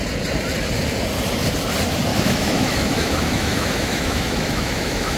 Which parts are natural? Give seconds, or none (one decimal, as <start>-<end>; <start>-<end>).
0.0-2.1